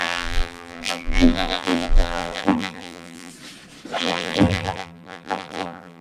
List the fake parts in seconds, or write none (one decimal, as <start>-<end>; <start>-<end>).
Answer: 0.0-3.3; 4.0-6.0